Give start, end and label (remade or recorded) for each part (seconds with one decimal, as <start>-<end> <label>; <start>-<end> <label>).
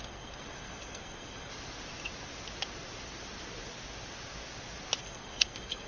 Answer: 0.0-1.5 remade; 1.5-5.0 recorded; 5.0-5.9 remade